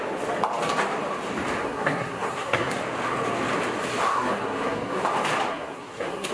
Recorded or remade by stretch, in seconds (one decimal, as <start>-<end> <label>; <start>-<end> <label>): 0.0-1.6 recorded; 1.6-2.8 remade; 2.8-4.1 recorded; 4.1-5.0 remade; 5.0-5.5 recorded; 5.5-6.3 remade